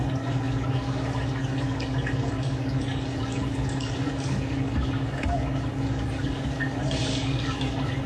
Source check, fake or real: fake